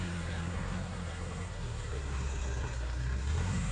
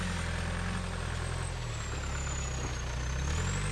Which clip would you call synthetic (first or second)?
first